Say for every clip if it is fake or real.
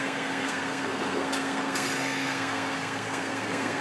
fake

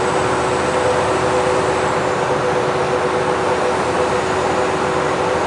real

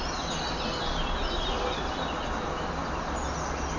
real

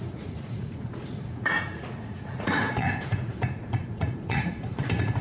fake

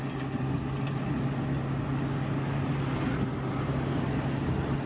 real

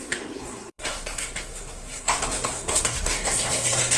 fake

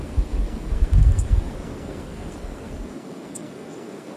fake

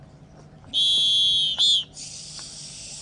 real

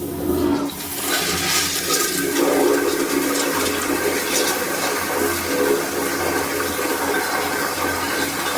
real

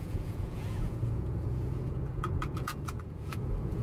fake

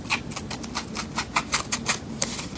real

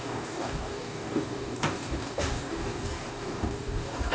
fake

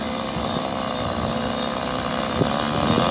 real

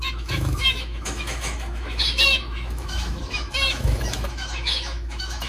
fake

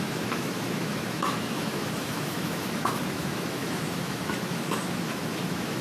fake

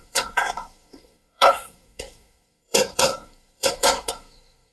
fake